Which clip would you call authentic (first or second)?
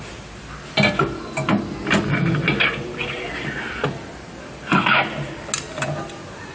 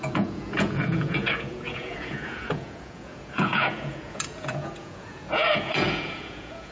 first